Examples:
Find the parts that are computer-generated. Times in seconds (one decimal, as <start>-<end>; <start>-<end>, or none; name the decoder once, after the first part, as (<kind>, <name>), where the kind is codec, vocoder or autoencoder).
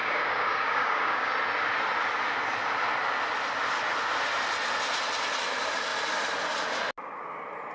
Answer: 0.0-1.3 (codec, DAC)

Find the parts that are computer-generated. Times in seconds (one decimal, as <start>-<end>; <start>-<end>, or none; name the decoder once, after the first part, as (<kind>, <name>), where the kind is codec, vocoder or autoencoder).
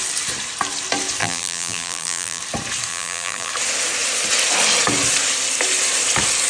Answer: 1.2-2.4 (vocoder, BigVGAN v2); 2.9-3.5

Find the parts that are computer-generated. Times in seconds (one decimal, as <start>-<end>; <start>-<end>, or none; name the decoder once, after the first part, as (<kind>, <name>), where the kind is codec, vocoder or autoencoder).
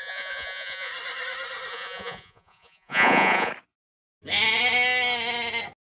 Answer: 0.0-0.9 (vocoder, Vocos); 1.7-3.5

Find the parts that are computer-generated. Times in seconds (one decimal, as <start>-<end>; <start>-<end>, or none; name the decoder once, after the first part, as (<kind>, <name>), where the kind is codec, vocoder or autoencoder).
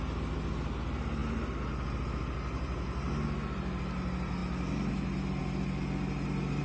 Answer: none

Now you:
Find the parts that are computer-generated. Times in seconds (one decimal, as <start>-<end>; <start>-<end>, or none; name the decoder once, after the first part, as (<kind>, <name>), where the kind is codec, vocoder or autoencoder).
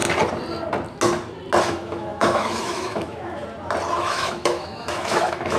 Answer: 1.6-3.4 (autoencoder, DAC-VAE); 4.0-5.6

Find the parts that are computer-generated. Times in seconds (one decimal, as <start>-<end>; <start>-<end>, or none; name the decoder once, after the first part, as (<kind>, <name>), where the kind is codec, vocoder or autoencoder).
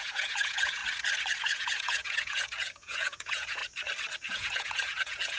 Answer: 0.0-0.8 (vocoder, Vocos); 1.4-3.6; 4.3-5.4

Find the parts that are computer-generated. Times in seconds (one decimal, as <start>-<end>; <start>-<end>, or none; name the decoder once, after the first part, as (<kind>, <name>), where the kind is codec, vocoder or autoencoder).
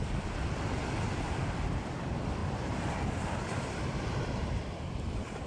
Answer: 2.4-5.5 (vocoder, BigVGAN v2)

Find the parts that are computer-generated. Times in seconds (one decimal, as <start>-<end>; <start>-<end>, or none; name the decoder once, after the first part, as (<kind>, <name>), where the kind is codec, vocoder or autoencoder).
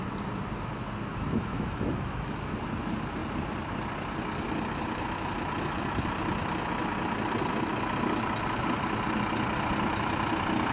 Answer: 1.1-2.6 (autoencoder, DAC-VAE)